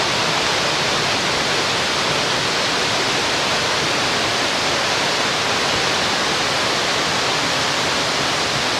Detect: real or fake real